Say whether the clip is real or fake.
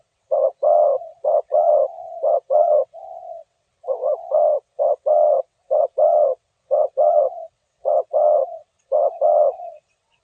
fake